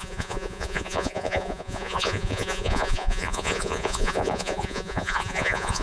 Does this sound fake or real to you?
fake